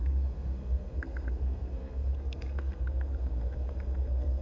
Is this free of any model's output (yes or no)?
no